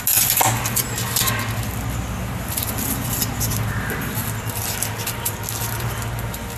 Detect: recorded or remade recorded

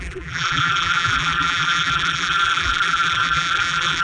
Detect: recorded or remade remade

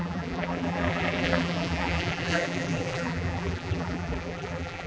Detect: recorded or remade remade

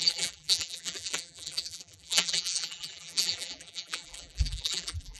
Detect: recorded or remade remade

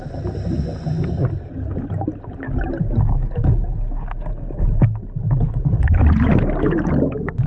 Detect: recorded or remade recorded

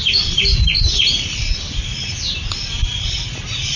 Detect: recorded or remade recorded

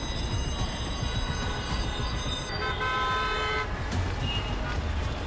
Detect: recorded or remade recorded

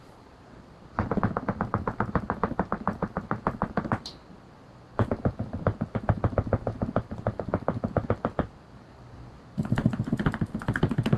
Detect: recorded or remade remade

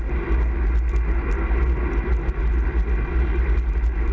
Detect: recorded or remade recorded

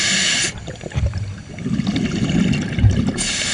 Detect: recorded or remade recorded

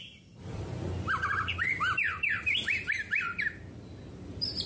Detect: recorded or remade remade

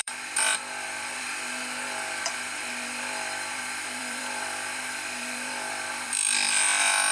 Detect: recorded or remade remade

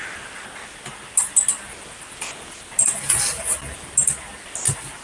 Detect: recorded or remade recorded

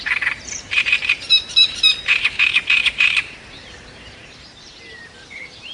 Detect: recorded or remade remade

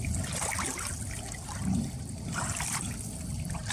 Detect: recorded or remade recorded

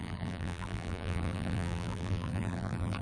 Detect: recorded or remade remade